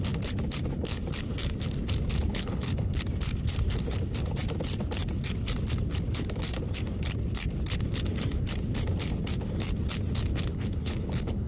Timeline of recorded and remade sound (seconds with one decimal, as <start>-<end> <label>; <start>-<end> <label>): 0.0-2.3 recorded; 2.3-3.0 remade; 3.0-10.5 recorded; 10.5-11.5 remade